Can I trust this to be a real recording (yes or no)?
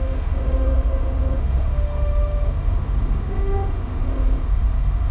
no